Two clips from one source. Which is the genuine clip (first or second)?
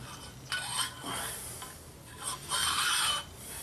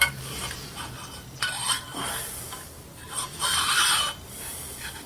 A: first